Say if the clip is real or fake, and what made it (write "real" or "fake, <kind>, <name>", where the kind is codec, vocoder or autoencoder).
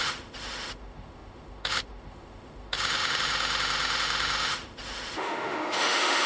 fake, autoencoder, DAC-VAE